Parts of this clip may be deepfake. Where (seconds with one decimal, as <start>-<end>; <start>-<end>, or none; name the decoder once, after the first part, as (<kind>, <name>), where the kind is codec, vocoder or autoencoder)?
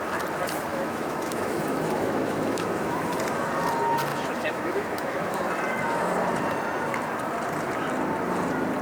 0.7-3.0 (autoencoder, DAC-VAE); 4.1-5.4